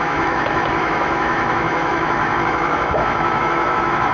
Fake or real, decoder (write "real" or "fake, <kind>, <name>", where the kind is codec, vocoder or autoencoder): fake, autoencoder, DAC-VAE